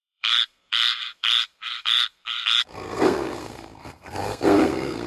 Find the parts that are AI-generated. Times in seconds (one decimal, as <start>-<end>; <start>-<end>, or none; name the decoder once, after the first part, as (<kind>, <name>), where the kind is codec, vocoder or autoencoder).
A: 0.0-5.1 (codec, SNAC)